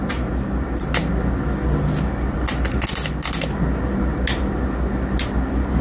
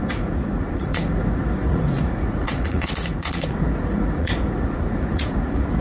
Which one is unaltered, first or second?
first